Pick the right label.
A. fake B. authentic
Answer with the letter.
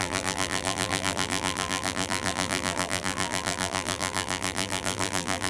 A